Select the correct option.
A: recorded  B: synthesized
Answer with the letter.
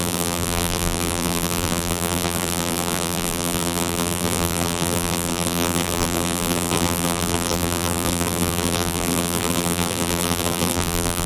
B